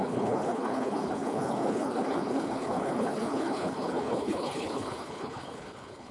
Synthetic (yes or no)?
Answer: yes